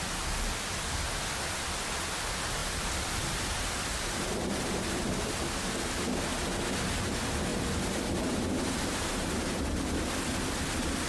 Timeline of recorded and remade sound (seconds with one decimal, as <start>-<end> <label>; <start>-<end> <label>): 0.0-2.6 recorded; 2.6-5.1 remade; 5.1-7.5 recorded; 7.5-10.0 remade; 10.0-11.1 recorded